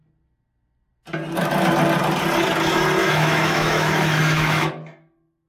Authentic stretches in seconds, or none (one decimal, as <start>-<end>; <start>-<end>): 0.0-3.0; 4.7-5.5